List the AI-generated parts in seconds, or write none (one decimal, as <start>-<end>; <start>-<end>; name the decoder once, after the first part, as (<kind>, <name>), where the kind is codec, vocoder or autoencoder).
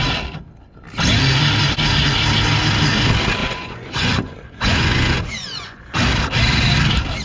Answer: 3.4-6.0 (vocoder, Vocos)